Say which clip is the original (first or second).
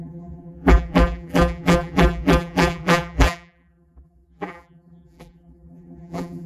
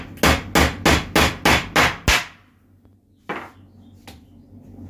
second